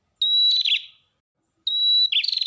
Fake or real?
real